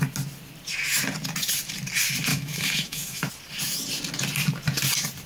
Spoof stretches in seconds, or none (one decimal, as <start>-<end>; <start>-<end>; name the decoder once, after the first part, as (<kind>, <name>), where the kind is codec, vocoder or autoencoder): 2.3-3.3 (autoencoder, DAC-VAE)